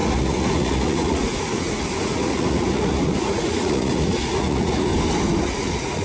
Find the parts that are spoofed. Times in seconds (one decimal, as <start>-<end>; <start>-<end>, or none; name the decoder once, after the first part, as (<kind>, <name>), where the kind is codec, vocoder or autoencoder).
0.0-4.9 (vocoder, Vocos); 5.4-6.0